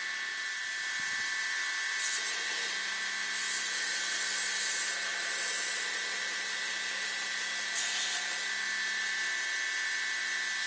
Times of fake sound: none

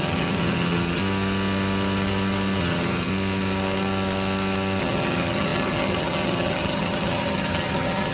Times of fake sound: 0.0-1.0 (vocoder, HiFi-GAN); 2.6-3.1; 4.8-8.1

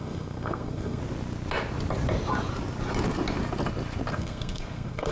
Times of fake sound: 0.0-1.0 (codec, SNAC); 4.1-5.1

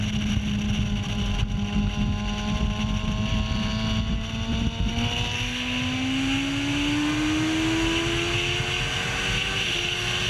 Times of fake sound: none

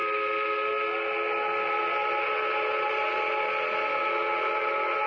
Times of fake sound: none

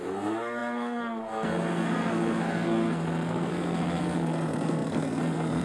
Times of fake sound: 0.0-5.6 (codec, SNAC)